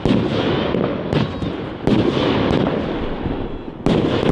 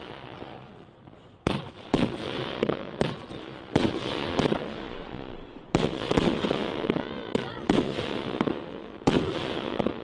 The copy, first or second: second